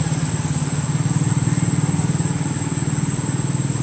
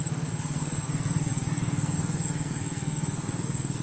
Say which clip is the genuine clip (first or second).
first